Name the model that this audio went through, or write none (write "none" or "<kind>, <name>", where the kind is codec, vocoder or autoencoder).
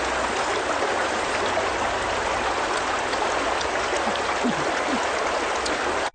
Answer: none